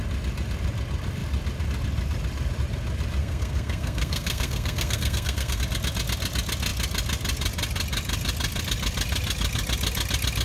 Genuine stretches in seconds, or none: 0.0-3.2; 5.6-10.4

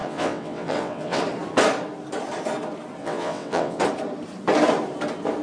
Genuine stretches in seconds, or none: 1.2-3.0; 3.8-5.4

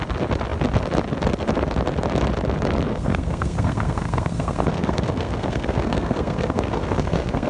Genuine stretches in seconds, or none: 0.0-2.9

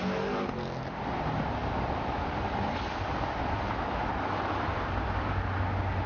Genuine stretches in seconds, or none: 0.0-1.6; 5.3-6.1